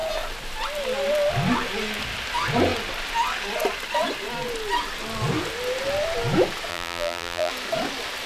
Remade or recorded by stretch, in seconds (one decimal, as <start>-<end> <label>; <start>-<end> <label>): 0.0-6.7 recorded; 6.7-7.5 remade; 7.5-8.3 recorded